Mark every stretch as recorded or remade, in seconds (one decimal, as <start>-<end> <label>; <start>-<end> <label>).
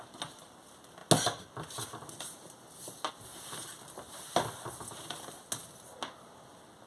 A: 0.0-6.9 recorded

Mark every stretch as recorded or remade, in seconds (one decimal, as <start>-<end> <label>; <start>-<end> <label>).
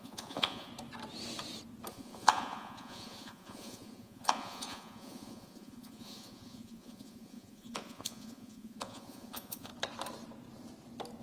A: 0.0-0.7 remade; 0.7-1.9 recorded; 1.9-9.7 remade; 9.7-11.2 recorded